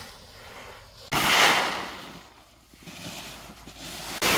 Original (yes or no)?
yes